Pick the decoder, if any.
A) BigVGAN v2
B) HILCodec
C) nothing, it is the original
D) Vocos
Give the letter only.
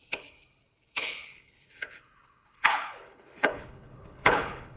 B